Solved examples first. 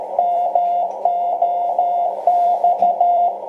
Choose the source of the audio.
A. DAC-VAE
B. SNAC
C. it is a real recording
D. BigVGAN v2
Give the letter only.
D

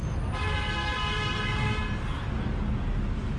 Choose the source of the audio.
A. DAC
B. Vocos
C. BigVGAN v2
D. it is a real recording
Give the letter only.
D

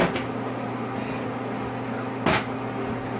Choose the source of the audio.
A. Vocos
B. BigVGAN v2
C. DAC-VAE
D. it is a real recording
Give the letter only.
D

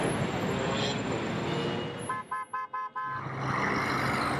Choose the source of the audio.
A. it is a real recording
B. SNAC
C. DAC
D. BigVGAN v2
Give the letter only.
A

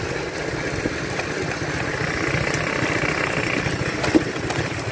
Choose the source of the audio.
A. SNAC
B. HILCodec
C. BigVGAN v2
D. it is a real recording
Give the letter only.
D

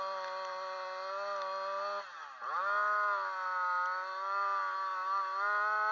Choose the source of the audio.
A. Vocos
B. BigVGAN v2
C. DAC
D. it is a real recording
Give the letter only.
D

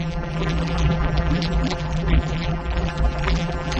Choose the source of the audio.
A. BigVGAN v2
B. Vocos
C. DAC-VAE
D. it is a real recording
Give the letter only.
A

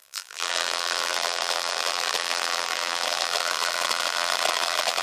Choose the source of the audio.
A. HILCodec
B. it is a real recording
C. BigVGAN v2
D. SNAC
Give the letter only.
C